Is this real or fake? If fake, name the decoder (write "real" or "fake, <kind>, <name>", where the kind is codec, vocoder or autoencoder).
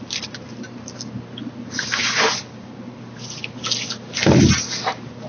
real